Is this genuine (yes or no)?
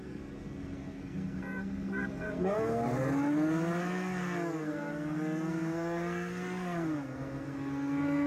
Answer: no